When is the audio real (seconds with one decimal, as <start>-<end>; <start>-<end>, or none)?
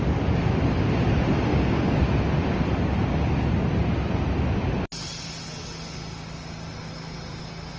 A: 0.0-1.5; 2.0-7.8